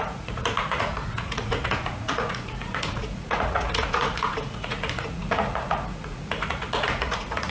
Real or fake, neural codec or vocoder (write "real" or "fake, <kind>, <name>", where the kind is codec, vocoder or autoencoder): fake, vocoder, Vocos